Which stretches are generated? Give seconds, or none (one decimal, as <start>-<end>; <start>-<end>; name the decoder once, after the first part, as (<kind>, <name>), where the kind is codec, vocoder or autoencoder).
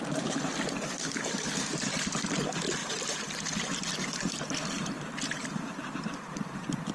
2.8-6.9 (vocoder, BigVGAN v2)